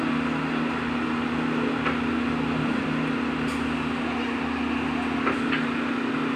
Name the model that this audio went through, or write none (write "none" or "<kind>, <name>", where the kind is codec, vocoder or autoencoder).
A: none